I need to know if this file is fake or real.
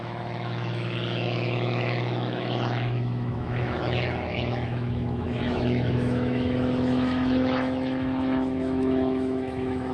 fake